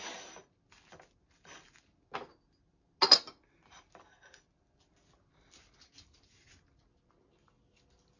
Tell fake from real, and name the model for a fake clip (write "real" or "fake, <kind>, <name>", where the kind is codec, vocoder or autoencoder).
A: real